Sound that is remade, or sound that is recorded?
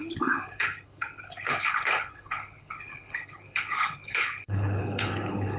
remade